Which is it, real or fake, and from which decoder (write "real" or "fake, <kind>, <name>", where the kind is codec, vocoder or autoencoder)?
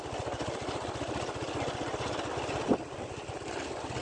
real